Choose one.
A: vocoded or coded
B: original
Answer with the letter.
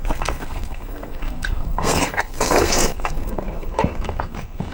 A